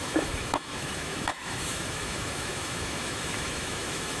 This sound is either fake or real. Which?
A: fake